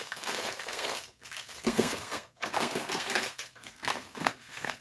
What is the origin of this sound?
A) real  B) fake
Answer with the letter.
B